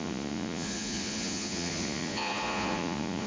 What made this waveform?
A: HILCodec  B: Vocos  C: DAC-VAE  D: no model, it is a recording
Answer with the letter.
B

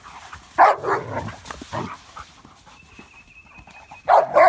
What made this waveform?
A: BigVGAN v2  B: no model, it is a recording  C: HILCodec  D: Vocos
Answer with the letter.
B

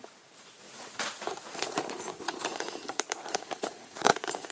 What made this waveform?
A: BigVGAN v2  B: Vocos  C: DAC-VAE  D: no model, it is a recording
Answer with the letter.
B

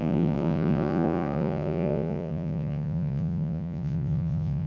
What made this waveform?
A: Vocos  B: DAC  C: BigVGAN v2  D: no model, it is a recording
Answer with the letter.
A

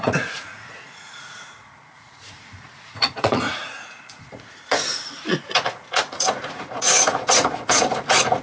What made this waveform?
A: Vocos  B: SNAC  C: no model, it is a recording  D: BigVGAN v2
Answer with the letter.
A